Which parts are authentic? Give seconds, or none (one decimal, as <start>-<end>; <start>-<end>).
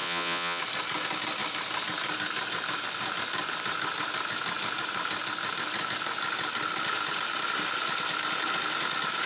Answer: 0.6-9.3